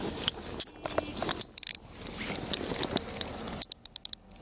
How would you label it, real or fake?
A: real